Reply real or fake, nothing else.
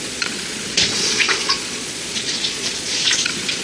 fake